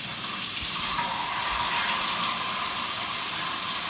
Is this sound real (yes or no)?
yes